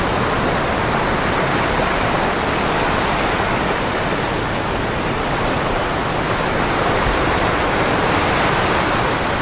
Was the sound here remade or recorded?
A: recorded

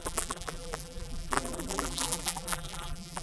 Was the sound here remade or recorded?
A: remade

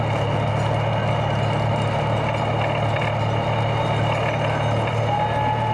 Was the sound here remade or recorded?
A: recorded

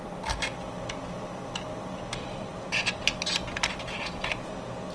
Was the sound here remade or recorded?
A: recorded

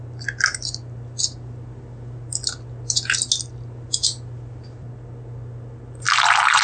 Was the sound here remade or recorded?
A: recorded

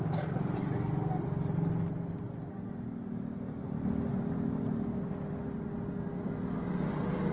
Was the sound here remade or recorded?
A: recorded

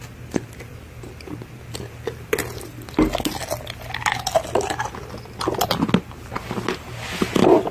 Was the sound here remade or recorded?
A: recorded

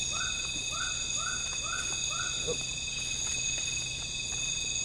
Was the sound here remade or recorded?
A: recorded